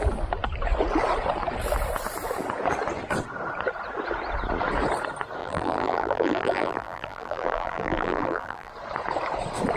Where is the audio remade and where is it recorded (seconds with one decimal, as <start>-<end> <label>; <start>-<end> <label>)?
0.0-5.4 recorded; 5.4-8.7 remade; 8.7-9.8 recorded